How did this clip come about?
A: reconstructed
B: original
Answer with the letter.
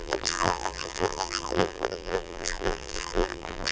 A